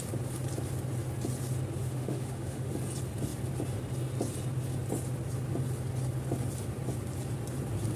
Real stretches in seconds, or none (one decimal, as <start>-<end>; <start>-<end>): 0.0-1.8; 2.7-8.0

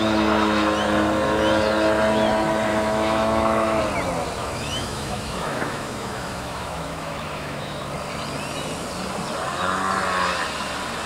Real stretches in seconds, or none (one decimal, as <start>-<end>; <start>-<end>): 0.0-2.7; 3.8-4.4; 7.8-11.1

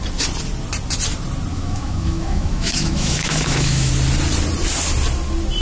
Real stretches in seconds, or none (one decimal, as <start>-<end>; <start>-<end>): 0.0-1.5; 3.9-5.6

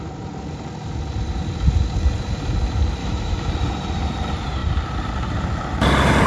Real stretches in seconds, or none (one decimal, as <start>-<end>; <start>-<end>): 0.0-3.0; 3.5-6.3

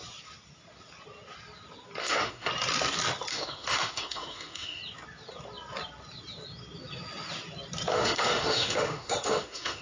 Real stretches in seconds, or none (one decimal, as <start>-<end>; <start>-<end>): 0.0-2.0; 2.5-3.3; 4.8-7.9

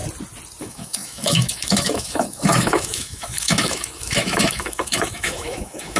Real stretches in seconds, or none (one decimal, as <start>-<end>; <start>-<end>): 0.0-0.6

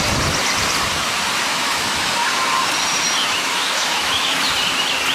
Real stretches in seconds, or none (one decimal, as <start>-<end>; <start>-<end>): 0.0-1.5; 2.0-3.2; 4.4-5.1

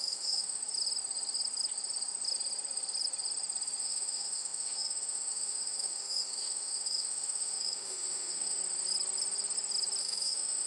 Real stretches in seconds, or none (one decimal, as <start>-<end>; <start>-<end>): 0.6-3.8; 8.6-10.0